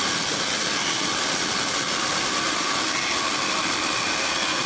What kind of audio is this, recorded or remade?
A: recorded